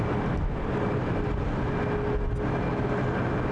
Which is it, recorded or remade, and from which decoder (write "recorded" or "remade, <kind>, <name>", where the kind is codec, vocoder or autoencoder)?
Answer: recorded